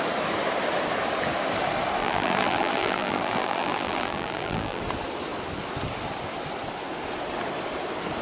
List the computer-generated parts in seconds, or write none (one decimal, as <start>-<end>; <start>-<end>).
2.0-4.8